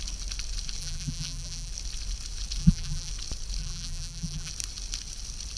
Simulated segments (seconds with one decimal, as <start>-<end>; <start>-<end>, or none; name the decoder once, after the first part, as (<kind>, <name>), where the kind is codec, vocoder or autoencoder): 0.8-1.7 (vocoder, BigVGAN v2); 2.6-3.1; 3.6-4.5